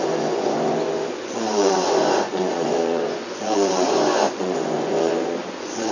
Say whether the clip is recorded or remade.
remade